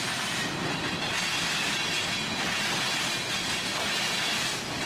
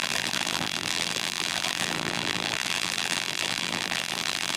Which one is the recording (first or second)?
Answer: first